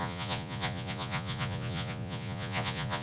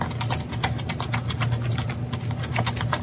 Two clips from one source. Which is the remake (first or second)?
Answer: first